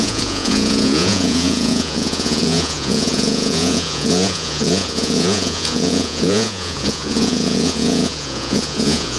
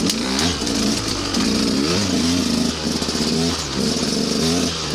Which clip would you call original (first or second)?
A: second